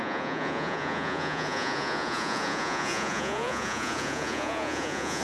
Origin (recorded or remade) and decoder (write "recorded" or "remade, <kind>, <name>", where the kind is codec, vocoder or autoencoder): remade, vocoder, Vocos